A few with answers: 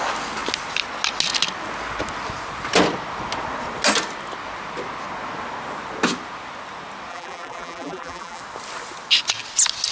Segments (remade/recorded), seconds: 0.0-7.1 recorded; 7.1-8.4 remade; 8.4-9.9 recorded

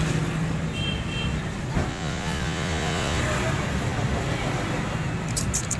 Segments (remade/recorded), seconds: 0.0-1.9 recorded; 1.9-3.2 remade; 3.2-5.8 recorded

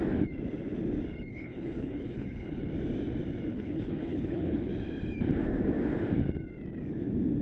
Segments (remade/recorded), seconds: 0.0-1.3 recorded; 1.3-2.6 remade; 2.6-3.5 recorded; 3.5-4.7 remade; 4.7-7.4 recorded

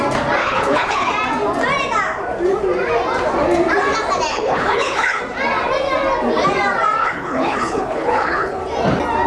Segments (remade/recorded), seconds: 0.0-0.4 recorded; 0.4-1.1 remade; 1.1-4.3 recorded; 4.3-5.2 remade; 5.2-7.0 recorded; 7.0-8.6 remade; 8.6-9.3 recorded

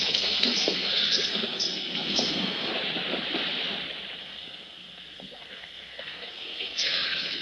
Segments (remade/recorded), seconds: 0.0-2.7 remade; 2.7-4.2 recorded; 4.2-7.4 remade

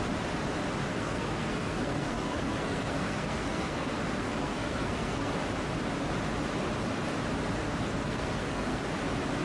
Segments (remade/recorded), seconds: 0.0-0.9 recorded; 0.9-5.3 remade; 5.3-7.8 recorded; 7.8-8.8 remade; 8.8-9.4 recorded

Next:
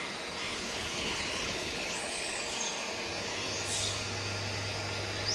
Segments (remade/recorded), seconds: 0.0-0.5 recorded; 0.5-2.4 remade; 2.4-5.3 recorded

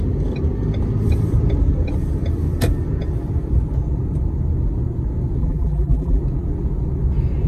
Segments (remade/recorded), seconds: 0.0-5.4 recorded; 5.4-6.2 remade; 6.2-7.5 recorded